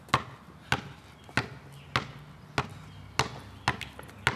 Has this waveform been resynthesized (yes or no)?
no